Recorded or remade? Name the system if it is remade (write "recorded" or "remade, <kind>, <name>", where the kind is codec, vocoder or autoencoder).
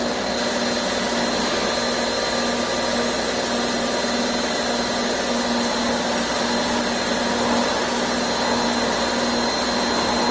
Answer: recorded